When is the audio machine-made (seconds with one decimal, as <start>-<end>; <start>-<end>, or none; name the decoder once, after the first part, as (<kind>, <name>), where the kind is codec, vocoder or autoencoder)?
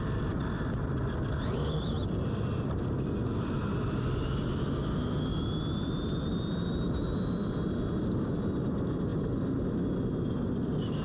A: none